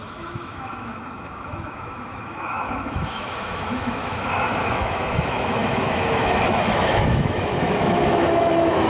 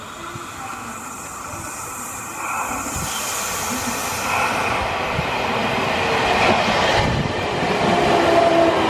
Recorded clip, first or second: second